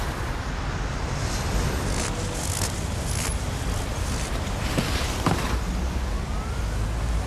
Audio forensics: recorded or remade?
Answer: recorded